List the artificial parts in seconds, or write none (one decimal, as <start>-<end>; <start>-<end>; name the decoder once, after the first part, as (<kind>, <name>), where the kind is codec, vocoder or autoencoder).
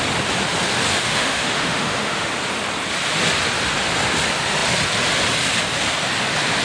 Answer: 0.9-2.3 (autoencoder, DAC-VAE)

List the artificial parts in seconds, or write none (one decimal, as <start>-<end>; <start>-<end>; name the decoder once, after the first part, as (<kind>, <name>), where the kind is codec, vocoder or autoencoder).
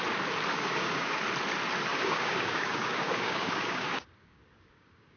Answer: 0.5-1.2 (codec, DAC); 1.9-5.2